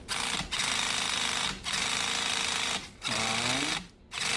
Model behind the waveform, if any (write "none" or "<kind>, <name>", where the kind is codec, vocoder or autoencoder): none